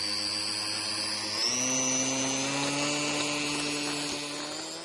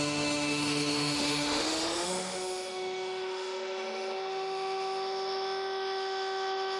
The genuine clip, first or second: first